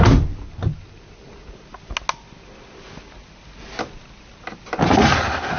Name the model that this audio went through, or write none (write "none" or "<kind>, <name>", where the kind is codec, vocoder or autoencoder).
none